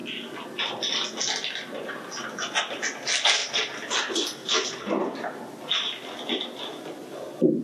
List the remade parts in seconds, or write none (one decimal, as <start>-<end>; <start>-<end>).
none